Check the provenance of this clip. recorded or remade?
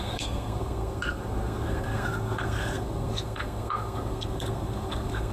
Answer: remade